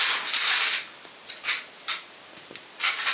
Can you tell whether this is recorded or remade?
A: recorded